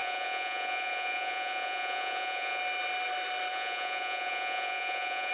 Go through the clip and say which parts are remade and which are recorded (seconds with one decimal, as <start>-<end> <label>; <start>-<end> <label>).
0.0-2.6 remade; 2.6-3.5 recorded; 3.5-5.3 remade